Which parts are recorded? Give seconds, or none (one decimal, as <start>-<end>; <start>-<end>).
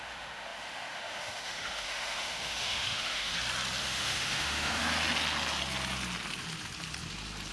3.3-3.8; 4.8-7.5